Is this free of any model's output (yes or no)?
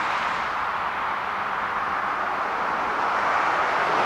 yes